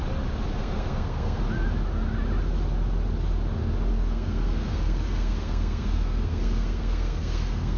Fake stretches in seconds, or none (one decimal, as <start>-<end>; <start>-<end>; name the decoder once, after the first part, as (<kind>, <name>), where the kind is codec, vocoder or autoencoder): 0.6-1.4 (codec, SNAC); 3.9-7.8